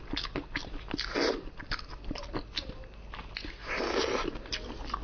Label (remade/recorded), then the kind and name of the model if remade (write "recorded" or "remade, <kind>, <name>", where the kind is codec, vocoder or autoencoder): recorded